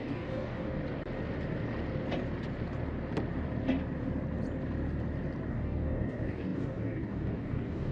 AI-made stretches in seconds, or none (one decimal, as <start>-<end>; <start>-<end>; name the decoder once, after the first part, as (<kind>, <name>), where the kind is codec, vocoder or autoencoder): 0.0-0.8 (codec, DAC); 5.5-7.9